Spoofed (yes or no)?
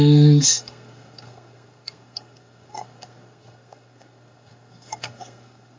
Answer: yes